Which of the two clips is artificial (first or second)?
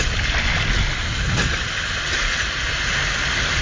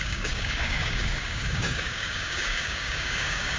second